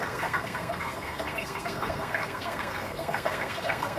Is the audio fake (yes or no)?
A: yes